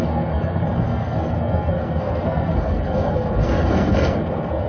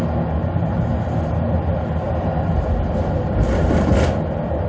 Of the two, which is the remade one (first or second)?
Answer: first